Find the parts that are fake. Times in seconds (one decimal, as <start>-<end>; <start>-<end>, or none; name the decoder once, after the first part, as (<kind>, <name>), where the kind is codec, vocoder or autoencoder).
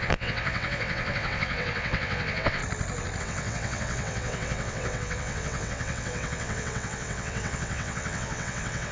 0.0-2.6 (vocoder, WaveNeXt); 3.2-8.9